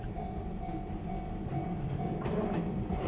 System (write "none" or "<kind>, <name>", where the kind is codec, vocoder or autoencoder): none